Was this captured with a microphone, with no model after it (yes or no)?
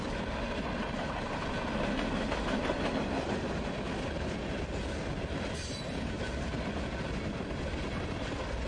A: yes